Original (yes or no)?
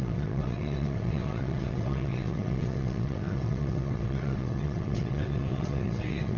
no